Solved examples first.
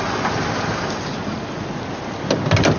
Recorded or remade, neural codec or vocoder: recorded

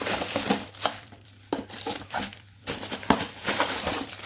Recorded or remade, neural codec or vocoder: remade, vocoder, BigVGAN v2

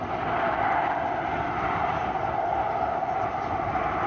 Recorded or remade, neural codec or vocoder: recorded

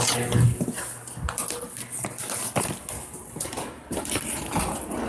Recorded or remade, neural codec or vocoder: recorded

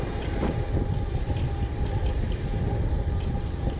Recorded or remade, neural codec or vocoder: remade, vocoder, BigVGAN v2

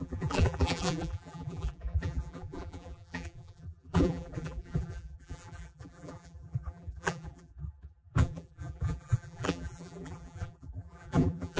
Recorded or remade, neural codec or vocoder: remade, vocoder, BigVGAN v2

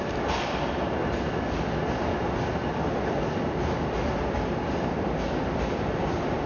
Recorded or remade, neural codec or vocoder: recorded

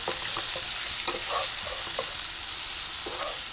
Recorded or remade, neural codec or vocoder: recorded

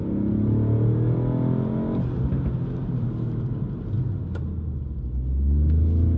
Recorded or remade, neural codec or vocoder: recorded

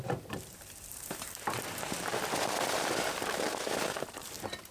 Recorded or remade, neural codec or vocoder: remade, vocoder, BigVGAN v2